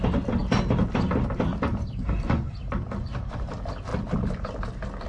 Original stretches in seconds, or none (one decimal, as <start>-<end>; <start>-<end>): 0.0-0.4; 3.5-5.1